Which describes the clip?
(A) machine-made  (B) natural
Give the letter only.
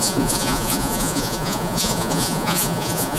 A